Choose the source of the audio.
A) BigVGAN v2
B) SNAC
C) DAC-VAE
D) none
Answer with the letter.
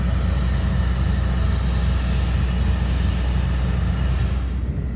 D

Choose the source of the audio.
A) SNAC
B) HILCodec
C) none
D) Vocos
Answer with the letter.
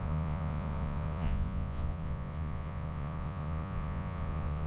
D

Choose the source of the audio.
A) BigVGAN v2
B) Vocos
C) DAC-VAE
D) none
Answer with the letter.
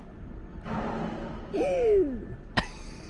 D